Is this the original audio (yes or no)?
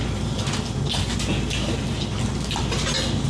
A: yes